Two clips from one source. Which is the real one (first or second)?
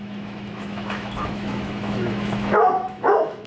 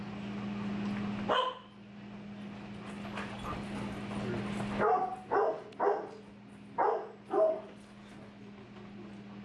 second